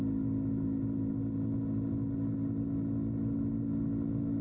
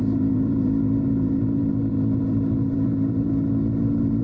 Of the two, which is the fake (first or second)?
second